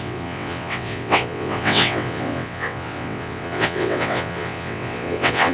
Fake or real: fake